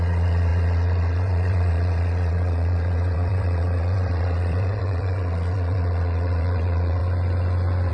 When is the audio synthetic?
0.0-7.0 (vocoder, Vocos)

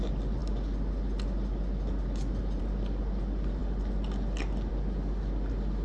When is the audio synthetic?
none

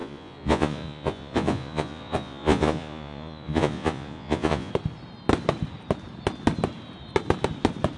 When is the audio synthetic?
0.0-4.7 (vocoder, Vocos)

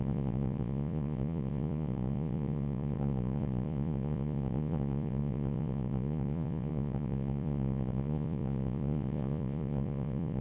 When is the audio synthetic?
0.0-10.4 (vocoder, Vocos)

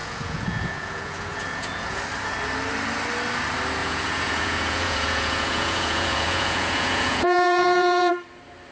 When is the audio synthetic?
0.0-2.0 (vocoder, Vocos); 3.8-8.1